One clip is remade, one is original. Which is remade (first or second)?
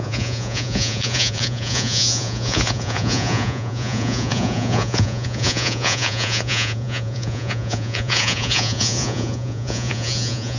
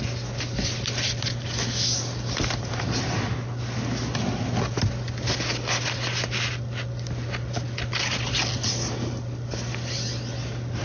first